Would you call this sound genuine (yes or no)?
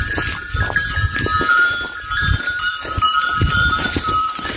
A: no